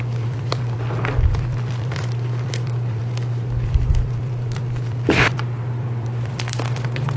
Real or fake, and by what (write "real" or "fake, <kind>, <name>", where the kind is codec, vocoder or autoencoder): fake, vocoder, BigVGAN v2